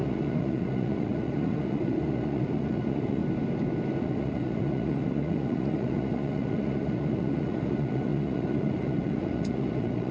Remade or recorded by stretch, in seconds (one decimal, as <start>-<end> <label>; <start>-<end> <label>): 0.0-3.2 remade; 3.2-4.0 recorded; 4.0-10.1 remade